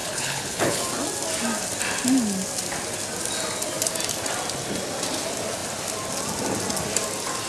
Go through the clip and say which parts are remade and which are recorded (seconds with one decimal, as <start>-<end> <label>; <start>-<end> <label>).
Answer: 0.0-0.8 remade; 0.8-7.5 recorded